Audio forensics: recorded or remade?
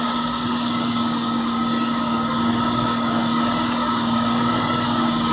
remade